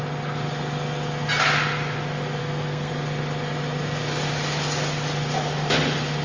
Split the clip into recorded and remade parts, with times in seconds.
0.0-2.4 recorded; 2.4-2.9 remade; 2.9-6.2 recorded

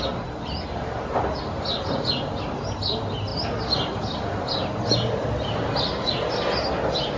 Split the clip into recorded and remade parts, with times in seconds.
0.0-7.2 recorded

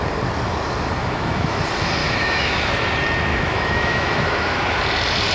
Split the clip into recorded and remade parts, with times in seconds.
0.0-1.0 recorded; 1.0-1.6 remade; 1.6-2.0 recorded; 2.0-2.7 remade; 2.7-3.3 recorded; 3.3-4.8 remade; 4.8-5.3 recorded

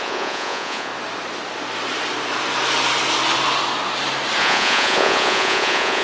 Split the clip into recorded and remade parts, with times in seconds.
0.0-0.9 remade; 0.9-4.4 recorded; 4.4-6.0 remade